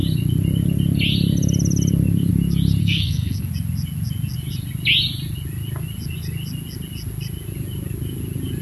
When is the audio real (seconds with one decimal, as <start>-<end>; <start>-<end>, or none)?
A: 0.0-2.8; 3.5-8.6